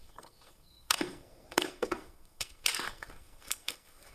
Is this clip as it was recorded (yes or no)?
no